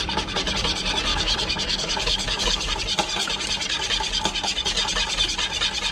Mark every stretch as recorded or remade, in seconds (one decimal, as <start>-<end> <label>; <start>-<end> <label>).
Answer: 0.0-1.1 recorded; 1.1-2.7 remade; 2.7-5.9 recorded